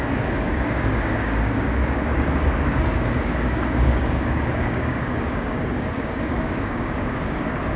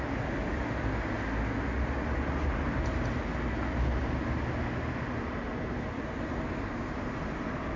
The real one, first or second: second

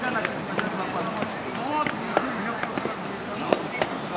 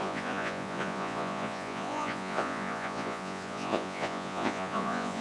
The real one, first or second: first